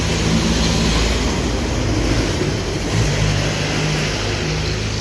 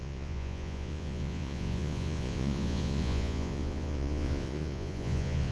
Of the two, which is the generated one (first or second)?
second